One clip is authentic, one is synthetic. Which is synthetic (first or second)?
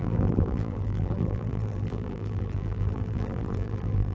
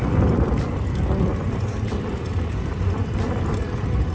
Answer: first